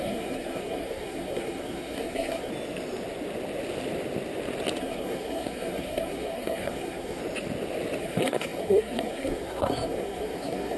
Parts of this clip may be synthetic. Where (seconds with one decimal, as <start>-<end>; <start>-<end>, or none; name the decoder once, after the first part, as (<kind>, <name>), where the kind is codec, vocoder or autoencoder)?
0.0-2.5 (codec, SNAC); 4.8-7.2; 8.0-10.8